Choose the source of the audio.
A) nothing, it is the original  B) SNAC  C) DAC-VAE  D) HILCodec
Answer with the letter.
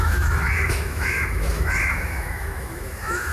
C